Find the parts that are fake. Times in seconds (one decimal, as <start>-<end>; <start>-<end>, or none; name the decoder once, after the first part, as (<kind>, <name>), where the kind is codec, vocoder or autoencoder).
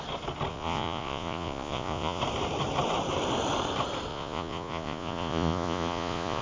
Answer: 0.5-2.2 (vocoder, Vocos); 4.1-6.4